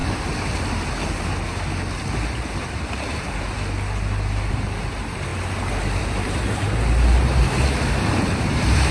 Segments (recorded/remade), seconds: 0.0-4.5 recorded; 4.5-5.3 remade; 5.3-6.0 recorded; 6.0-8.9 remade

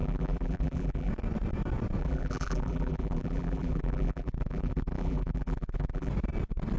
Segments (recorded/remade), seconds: 0.0-1.1 remade; 1.1-2.0 recorded; 2.0-6.1 remade; 6.1-6.8 recorded

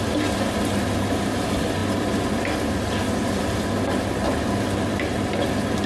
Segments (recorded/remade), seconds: 0.0-5.9 recorded

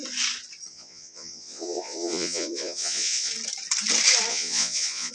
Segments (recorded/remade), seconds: 0.0-0.7 recorded; 0.7-3.3 remade; 3.3-4.3 recorded; 4.3-5.1 remade

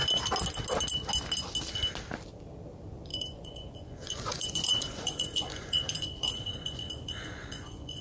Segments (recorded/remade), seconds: 0.0-3.1 recorded; 3.1-8.0 remade